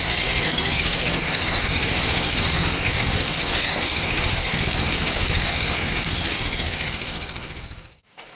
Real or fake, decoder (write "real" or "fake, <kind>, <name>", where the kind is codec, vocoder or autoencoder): fake, codec, DAC